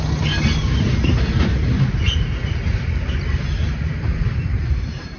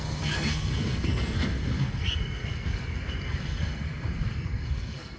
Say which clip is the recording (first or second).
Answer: first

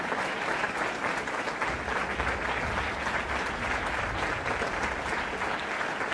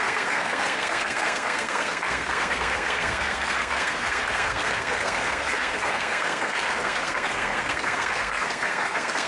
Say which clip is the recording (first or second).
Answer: first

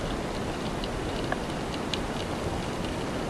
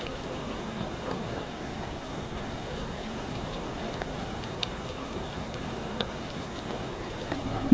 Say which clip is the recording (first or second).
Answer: first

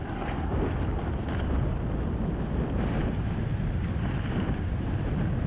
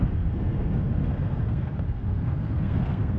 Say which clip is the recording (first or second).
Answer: first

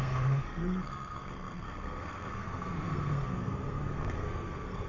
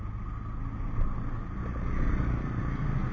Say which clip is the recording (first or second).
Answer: second